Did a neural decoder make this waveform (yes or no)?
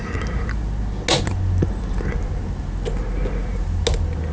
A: no